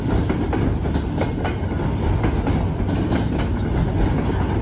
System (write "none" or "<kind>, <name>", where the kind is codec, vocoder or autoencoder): none